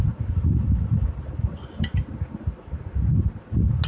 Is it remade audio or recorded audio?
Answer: recorded